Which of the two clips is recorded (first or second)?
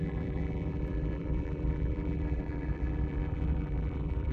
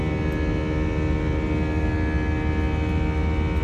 second